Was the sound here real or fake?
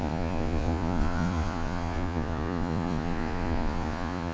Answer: fake